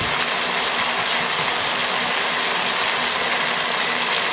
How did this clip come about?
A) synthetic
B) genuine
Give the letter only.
B